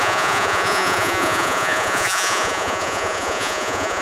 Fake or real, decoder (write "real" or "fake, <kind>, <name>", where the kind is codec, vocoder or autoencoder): fake, vocoder, Vocos